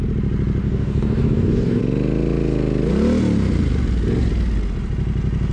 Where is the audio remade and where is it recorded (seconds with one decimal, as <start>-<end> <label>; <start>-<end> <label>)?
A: 0.0-0.6 recorded; 0.6-1.8 remade; 1.8-5.5 recorded